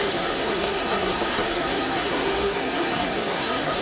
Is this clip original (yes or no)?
no